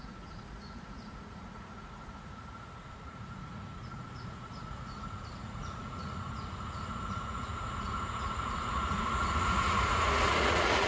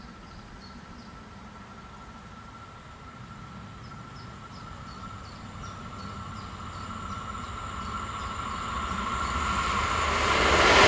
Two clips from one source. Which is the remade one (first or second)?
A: first